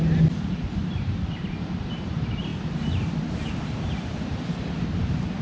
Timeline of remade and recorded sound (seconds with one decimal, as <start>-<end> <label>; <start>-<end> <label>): 0.0-0.8 recorded; 0.8-1.6 remade; 1.6-5.4 recorded

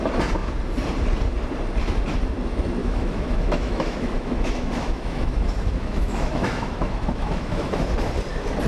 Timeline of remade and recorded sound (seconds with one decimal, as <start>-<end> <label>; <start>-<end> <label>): 0.0-2.8 recorded; 2.8-7.9 remade; 7.9-8.7 recorded

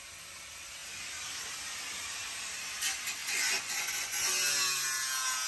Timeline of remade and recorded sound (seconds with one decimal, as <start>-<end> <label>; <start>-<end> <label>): 0.0-3.2 recorded; 3.2-4.3 remade; 4.3-5.5 recorded